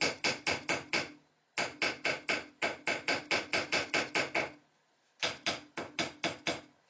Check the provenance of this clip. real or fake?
real